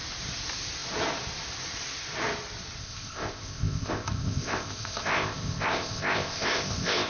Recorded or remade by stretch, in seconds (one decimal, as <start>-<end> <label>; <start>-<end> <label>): 0.0-2.8 recorded; 2.8-7.1 remade